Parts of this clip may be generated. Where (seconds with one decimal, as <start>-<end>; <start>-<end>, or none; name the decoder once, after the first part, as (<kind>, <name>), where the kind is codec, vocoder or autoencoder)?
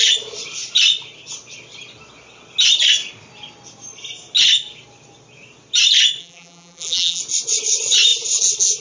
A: 6.2-7.2 (vocoder, BigVGAN v2)